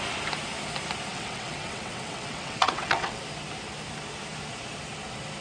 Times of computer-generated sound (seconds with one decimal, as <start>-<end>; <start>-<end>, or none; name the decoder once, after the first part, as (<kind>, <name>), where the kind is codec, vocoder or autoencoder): 1.1-3.2 (vocoder, WaveNeXt)